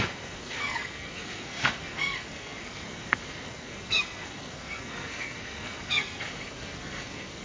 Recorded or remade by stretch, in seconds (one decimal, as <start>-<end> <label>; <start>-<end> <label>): 0.0-7.4 remade